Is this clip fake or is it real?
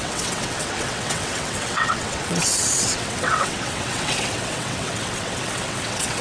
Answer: fake